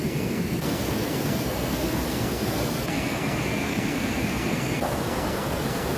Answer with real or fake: fake